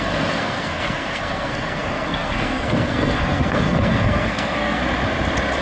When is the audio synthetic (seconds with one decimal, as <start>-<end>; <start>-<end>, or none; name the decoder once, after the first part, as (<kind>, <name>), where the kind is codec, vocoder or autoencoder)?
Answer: 0.0-4.8 (codec, SNAC)